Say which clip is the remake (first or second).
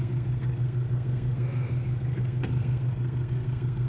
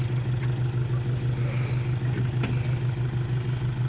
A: first